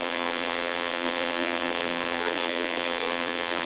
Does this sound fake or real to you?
fake